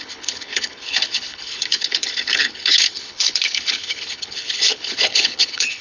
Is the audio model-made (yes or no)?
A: yes